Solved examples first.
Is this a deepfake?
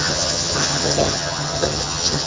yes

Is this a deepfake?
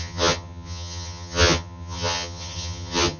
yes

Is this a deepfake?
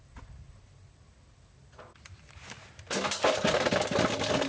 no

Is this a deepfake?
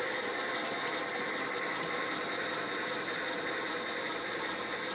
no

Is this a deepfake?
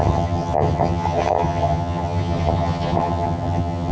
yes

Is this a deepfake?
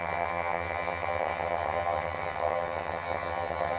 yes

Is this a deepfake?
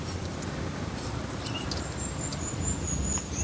no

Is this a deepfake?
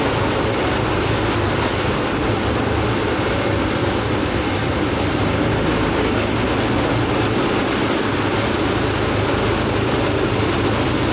no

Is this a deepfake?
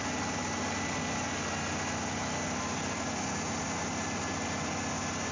no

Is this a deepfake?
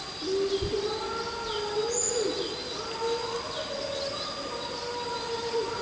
no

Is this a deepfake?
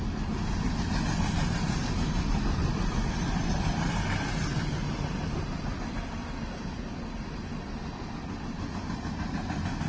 no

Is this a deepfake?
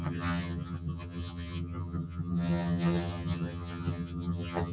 yes